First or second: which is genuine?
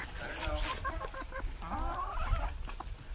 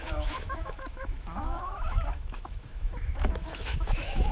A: first